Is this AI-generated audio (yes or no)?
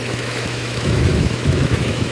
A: yes